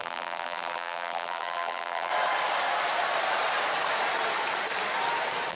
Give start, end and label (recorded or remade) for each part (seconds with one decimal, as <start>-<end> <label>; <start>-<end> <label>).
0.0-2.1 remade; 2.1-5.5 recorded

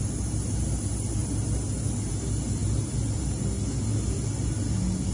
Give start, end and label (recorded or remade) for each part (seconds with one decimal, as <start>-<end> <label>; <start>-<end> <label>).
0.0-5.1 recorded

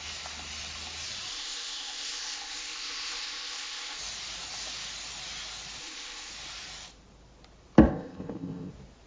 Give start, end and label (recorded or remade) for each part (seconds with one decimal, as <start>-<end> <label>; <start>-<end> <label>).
0.0-1.3 recorded; 1.3-4.0 remade; 4.0-5.8 recorded; 5.8-6.3 remade; 6.3-7.9 recorded; 7.9-8.7 remade; 8.7-9.1 recorded

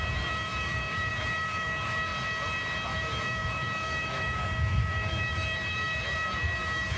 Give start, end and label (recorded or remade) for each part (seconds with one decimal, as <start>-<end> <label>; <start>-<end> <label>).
0.0-2.1 remade; 2.1-3.0 recorded; 3.0-7.0 remade